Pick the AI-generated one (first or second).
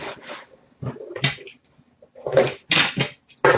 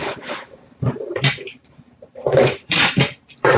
second